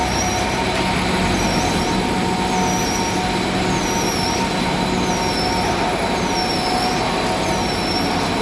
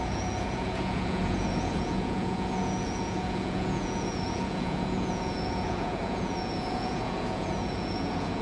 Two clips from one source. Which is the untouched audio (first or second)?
first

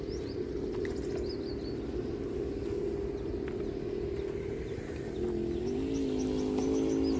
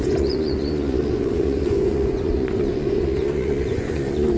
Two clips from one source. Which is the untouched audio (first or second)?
first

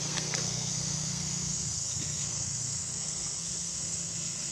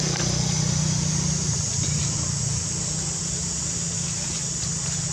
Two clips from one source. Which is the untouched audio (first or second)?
second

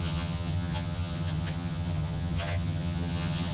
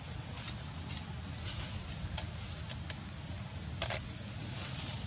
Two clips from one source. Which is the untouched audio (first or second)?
second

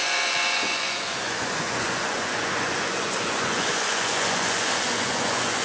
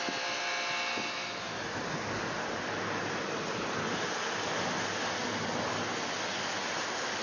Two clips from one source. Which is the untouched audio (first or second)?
second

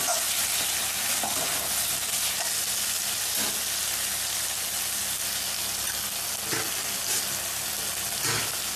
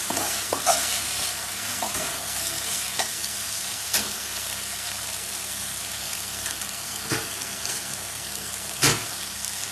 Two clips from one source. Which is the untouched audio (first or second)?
first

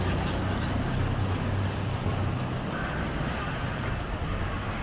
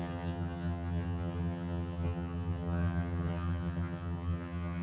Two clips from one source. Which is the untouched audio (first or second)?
first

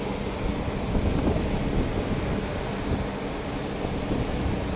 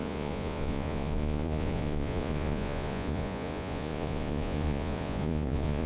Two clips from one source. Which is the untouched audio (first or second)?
first